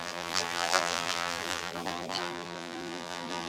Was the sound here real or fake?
fake